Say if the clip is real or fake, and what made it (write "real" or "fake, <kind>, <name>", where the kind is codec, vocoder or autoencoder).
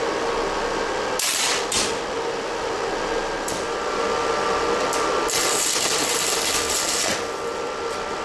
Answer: real